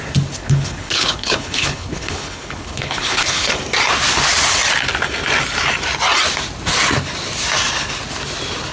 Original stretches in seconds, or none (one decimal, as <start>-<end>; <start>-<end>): 0.0-0.4; 3.5-8.7